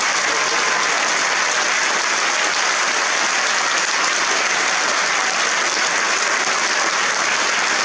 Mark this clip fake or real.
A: real